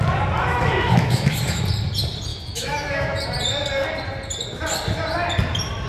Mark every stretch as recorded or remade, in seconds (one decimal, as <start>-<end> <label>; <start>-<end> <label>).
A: 0.0-0.5 recorded; 0.5-1.6 remade; 1.6-2.3 recorded; 2.3-3.2 remade; 3.2-5.9 recorded